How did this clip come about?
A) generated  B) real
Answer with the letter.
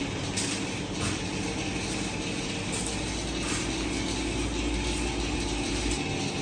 B